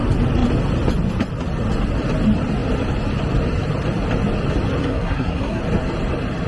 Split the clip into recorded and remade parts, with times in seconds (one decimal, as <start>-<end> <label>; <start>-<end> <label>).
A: 0.0-4.8 recorded; 4.8-5.6 remade; 5.6-6.5 recorded